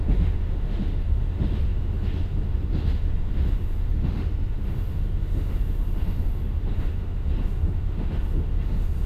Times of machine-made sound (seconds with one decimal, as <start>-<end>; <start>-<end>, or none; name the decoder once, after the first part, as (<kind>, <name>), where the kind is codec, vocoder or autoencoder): 0.0-9.1 (autoencoder, DAC-VAE)